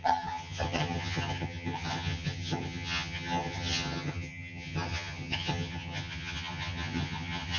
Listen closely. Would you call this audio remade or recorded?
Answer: remade